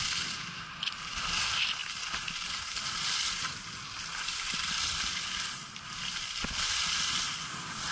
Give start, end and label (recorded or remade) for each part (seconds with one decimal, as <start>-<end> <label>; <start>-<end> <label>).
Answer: 0.0-7.9 recorded

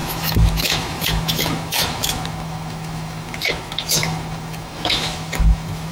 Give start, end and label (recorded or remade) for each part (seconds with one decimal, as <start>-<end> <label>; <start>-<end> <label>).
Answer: 0.0-5.9 remade

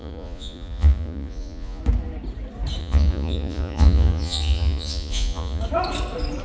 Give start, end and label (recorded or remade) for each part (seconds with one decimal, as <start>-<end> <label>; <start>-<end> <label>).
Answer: 0.0-1.8 remade; 1.8-2.8 recorded; 2.8-5.6 remade; 5.6-6.4 recorded